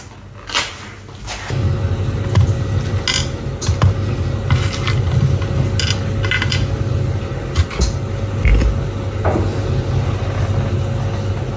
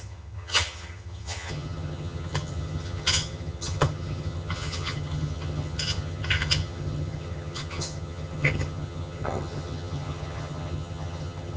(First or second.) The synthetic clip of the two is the second